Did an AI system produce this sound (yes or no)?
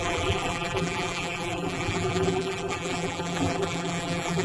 yes